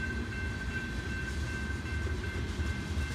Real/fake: real